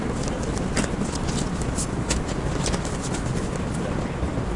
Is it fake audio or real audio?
real